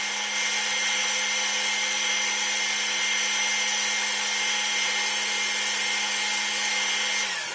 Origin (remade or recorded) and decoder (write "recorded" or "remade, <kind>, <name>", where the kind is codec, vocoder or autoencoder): recorded